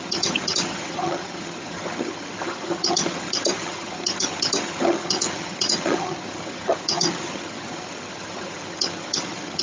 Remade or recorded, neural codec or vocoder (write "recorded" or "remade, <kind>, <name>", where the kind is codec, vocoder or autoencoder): remade, vocoder, HiFi-GAN